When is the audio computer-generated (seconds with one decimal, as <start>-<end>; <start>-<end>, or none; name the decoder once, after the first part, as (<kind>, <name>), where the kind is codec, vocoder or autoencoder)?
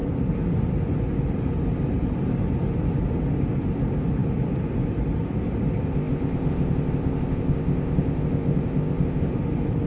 5.8-9.3 (codec, ZipCodec)